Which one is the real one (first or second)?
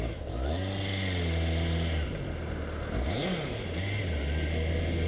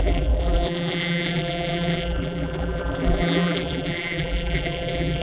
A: first